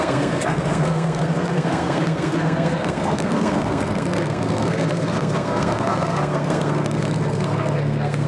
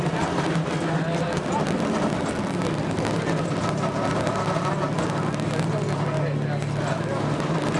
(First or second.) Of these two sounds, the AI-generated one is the first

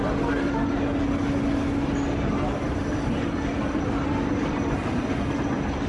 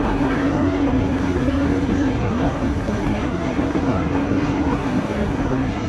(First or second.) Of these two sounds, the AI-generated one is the second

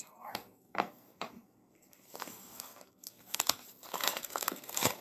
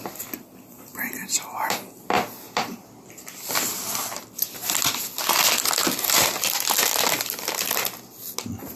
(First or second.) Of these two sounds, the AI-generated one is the first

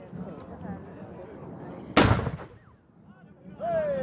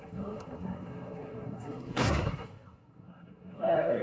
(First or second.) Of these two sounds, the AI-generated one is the second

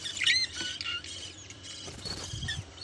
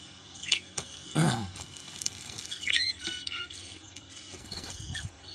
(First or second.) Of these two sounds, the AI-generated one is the second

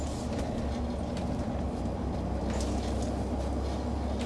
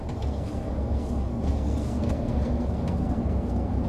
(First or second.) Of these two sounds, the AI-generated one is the second